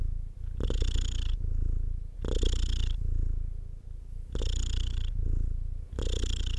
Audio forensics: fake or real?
real